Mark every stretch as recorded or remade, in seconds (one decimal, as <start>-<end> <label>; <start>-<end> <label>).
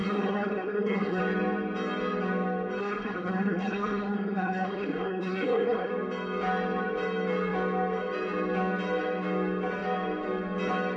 0.0-1.2 remade; 1.2-2.8 recorded; 2.8-5.9 remade; 5.9-11.0 recorded